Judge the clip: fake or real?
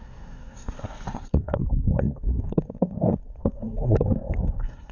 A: fake